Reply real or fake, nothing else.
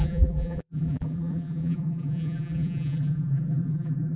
fake